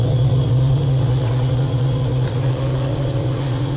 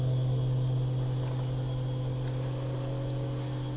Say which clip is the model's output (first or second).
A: first